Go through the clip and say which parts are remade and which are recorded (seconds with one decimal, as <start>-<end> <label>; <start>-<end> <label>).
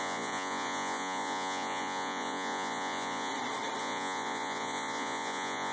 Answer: 0.0-3.3 remade; 3.3-3.8 recorded; 3.8-5.7 remade